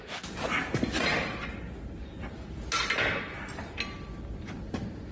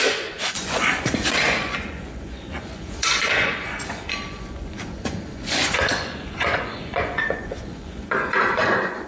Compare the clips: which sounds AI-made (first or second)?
second